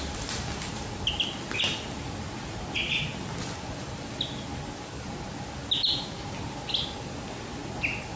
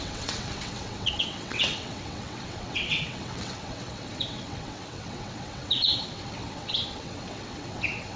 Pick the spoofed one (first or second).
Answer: second